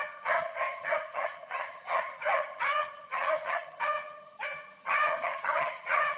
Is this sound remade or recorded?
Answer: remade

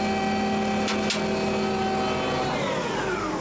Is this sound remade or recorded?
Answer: recorded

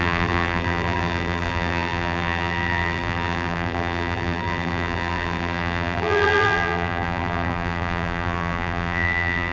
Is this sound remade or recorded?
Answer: remade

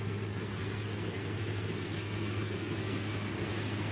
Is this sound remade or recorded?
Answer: remade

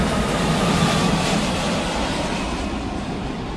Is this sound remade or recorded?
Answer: recorded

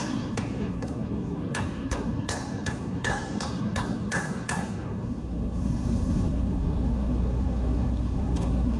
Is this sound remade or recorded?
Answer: remade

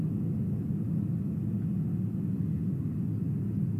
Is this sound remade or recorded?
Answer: recorded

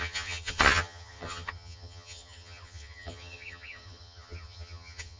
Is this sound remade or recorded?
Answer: remade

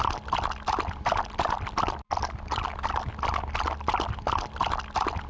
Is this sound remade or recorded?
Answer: recorded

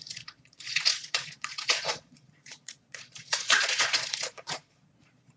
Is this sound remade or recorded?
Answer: remade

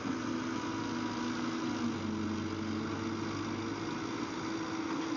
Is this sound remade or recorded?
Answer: recorded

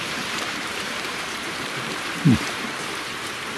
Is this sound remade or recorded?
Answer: remade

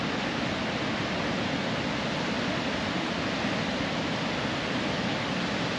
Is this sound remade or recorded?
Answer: recorded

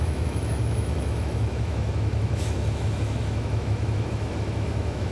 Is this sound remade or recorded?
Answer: remade